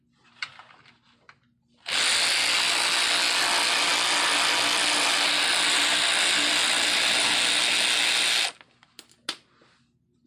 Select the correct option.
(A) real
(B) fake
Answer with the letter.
A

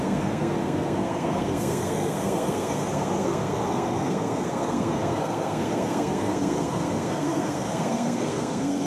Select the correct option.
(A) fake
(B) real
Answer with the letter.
A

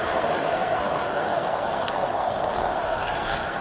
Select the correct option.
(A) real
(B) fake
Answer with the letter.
B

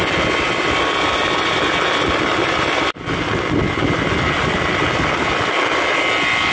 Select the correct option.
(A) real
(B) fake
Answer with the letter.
A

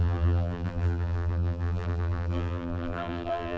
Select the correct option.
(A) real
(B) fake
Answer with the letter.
B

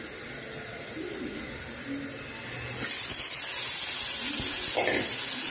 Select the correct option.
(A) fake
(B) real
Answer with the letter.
B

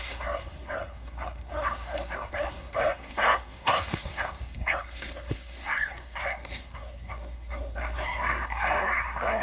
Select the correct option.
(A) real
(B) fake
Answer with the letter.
B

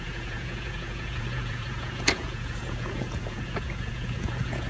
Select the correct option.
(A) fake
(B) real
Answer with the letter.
A